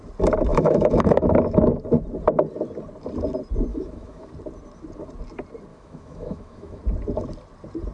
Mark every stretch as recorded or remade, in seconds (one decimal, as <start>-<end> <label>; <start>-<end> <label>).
0.0-0.5 recorded; 0.5-1.7 remade; 1.7-3.7 recorded; 3.7-4.3 remade; 4.3-5.7 recorded; 5.7-6.8 remade; 6.8-7.9 recorded